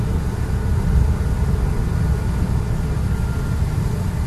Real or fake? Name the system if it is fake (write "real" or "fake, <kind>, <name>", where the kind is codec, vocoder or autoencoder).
real